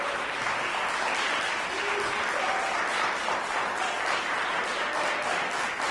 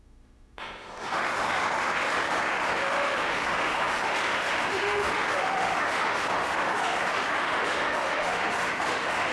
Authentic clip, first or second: first